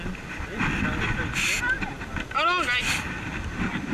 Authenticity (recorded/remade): recorded